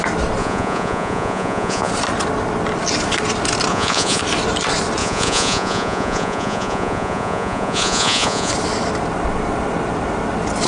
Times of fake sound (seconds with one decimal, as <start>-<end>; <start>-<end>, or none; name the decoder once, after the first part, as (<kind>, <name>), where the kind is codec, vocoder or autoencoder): 0.4-1.9 (vocoder, Vocos); 3.7-4.2; 5.0-8.5